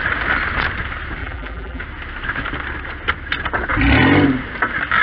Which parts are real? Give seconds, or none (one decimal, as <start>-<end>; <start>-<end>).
0.0-1.2; 1.8-5.0

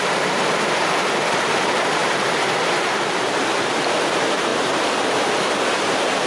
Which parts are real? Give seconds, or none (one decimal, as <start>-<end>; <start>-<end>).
none

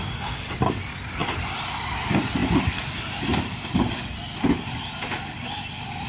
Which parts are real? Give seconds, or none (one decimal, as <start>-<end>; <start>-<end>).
0.0-2.4; 3.9-6.1

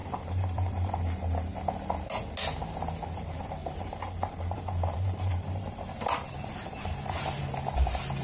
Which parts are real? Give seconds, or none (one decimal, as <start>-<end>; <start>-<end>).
0.9-3.6; 7.4-8.2

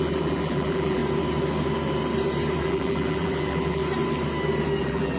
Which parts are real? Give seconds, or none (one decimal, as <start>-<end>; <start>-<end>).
1.0-2.6; 3.8-4.8

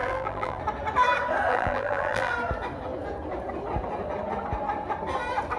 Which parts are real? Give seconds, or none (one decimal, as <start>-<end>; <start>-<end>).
0.6-1.5; 2.3-5.6

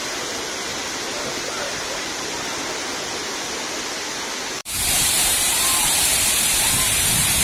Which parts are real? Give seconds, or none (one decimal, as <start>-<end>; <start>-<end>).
0.0-4.6